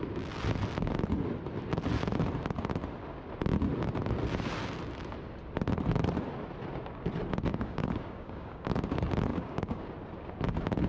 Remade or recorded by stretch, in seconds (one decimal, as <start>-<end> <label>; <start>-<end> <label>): 0.0-7.5 recorded; 7.5-8.7 remade; 8.7-9.3 recorded; 9.3-9.9 remade; 9.9-10.9 recorded